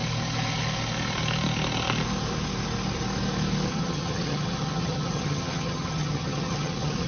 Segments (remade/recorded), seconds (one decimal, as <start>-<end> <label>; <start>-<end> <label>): 0.0-3.7 recorded; 3.7-7.1 remade